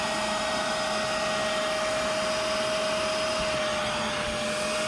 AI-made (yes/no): no